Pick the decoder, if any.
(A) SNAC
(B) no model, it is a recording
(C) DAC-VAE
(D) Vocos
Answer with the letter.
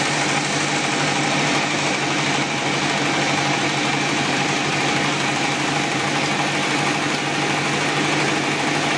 B